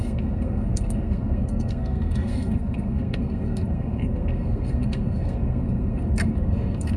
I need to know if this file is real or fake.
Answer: fake